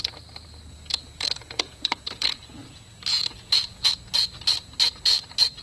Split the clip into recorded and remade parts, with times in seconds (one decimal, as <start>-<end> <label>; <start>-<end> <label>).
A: 0.0-0.9 recorded; 0.9-2.7 remade; 2.7-3.1 recorded; 3.1-3.9 remade; 3.9-5.6 recorded